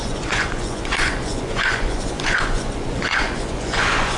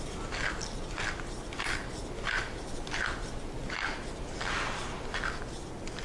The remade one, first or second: first